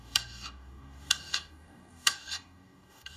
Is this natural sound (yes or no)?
no